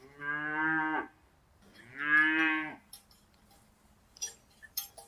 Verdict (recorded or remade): recorded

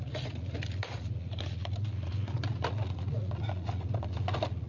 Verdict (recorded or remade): remade